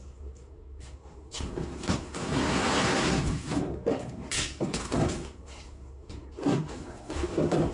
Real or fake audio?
fake